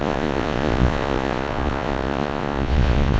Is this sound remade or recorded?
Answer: remade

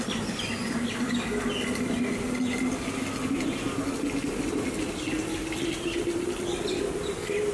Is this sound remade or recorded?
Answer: recorded